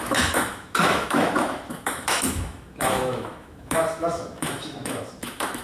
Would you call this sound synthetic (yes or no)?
yes